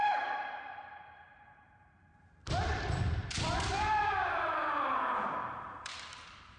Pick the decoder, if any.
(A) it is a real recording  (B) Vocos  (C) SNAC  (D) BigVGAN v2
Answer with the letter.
D